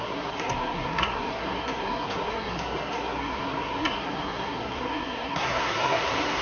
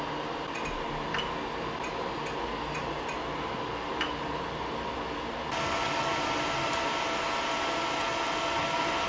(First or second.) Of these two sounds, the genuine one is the second